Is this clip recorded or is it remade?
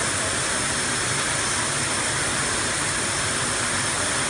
recorded